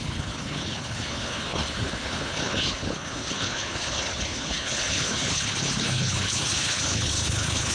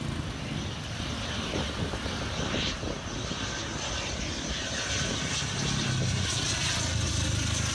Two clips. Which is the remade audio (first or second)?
first